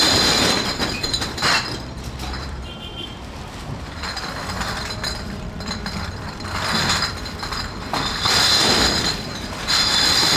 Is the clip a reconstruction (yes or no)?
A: yes